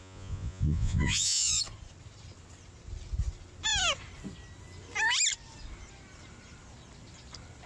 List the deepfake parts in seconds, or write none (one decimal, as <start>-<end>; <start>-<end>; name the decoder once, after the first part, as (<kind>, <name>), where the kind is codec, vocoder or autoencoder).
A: 0.0-1.6 (vocoder, Vocos)